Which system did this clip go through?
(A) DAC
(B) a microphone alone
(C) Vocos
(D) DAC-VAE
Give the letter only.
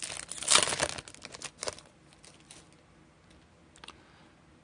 B